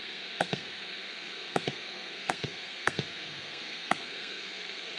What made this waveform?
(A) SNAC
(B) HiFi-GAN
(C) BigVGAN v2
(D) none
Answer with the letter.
A